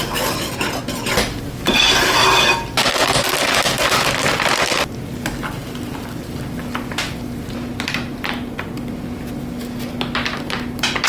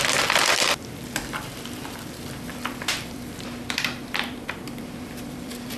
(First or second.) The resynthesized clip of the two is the second